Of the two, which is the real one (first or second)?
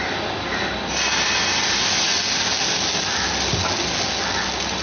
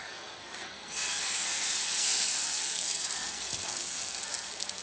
first